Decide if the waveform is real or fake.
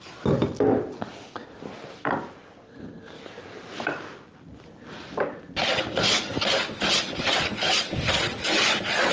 real